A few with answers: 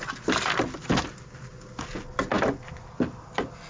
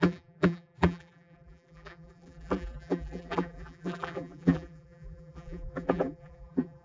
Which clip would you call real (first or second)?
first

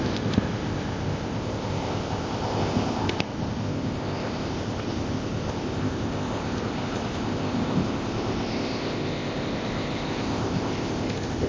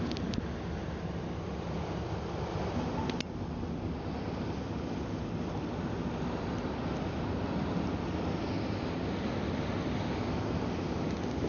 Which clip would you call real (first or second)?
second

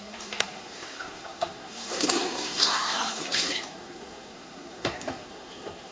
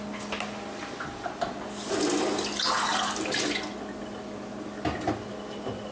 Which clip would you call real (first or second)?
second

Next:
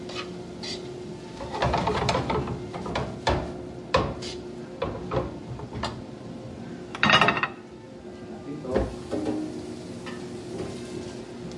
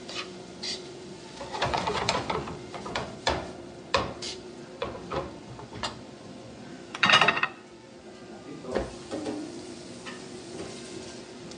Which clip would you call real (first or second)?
first